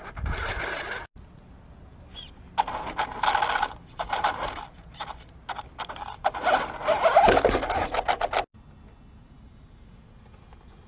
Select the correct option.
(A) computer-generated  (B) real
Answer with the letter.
B